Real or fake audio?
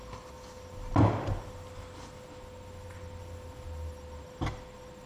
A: real